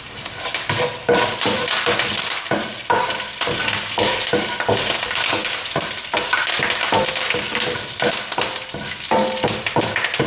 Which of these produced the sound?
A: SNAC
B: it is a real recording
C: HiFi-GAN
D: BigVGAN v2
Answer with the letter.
B